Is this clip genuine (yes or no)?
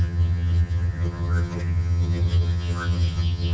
no